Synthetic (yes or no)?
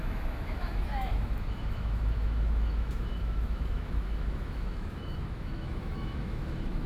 yes